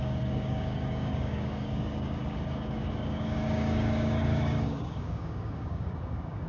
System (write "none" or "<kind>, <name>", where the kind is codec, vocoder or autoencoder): codec, DAC